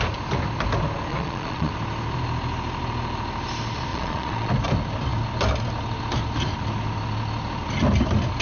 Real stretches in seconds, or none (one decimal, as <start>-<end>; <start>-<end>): 0.0-1.1; 1.7-3.9; 4.5-8.4